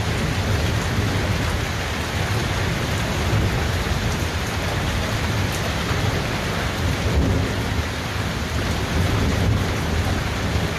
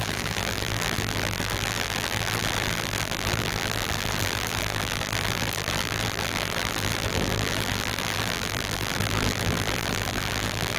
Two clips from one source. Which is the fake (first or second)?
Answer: second